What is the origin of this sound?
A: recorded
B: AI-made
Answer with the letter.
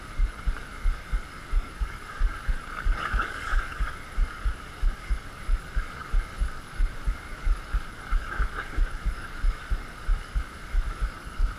B